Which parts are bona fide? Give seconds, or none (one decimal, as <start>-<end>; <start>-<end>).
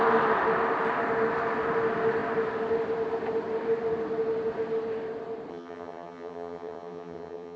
0.0-5.5